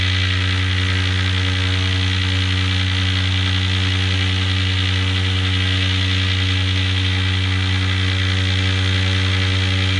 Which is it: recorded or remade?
recorded